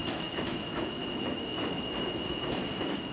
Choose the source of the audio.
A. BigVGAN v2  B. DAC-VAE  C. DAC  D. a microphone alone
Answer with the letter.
B